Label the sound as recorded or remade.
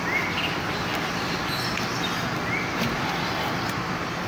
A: recorded